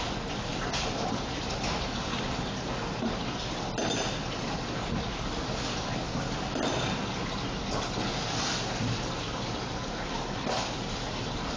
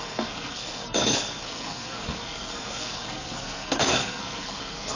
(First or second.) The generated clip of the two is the second